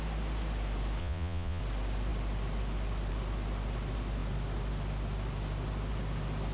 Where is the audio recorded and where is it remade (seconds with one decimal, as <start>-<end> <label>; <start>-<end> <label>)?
0.0-1.0 recorded; 1.0-1.6 remade; 1.6-6.5 recorded